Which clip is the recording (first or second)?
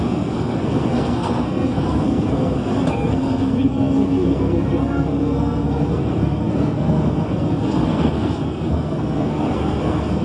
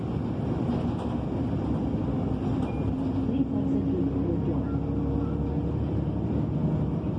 second